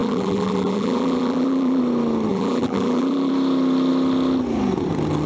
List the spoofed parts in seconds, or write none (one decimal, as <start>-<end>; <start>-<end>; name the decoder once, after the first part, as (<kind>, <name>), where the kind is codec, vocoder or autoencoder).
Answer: 0.0-1.8 (vocoder, BigVGAN v2); 2.3-3.3